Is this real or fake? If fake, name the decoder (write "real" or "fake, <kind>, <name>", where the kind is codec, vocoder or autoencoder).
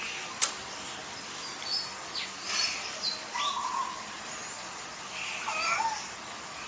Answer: real